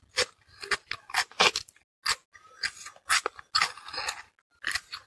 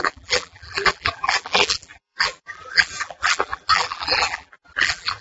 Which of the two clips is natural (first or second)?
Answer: first